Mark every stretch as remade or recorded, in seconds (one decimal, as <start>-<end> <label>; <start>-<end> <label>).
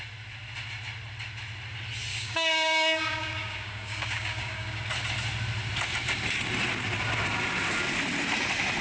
0.0-2.1 recorded; 2.1-4.8 remade; 4.8-8.8 recorded